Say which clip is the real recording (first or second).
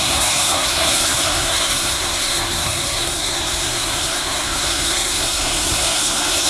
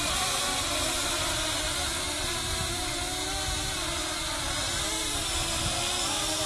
second